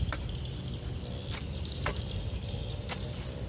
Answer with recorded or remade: recorded